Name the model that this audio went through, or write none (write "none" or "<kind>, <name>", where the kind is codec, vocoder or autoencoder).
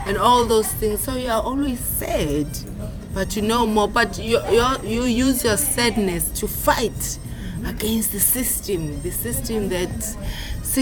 vocoder, BigVGAN v2